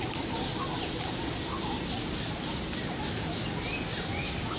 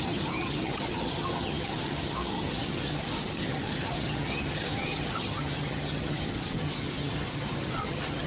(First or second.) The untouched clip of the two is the first